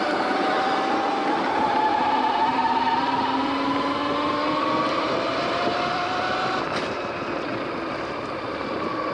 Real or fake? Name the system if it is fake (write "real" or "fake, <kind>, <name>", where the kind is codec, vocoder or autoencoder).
real